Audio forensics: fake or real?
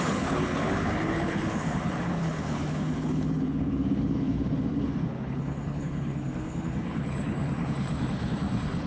fake